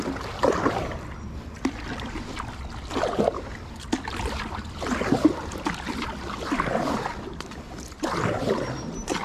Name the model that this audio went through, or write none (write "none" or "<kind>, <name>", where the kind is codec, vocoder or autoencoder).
none